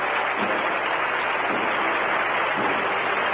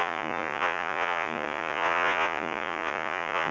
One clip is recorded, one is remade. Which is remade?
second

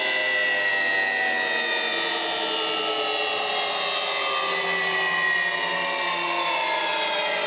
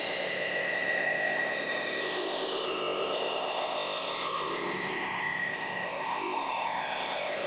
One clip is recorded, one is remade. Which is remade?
second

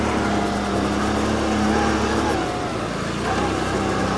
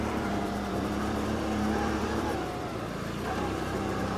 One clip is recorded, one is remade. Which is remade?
second